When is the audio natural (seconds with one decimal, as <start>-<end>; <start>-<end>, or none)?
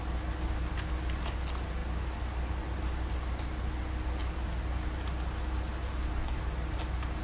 1.8-3.1; 4.2-5.4